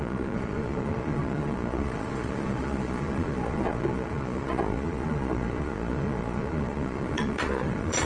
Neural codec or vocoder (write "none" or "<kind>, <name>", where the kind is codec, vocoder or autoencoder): vocoder, Vocos